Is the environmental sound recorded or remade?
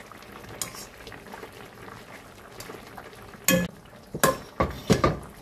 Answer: recorded